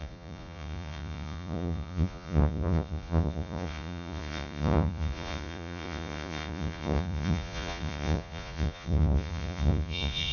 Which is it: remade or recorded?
remade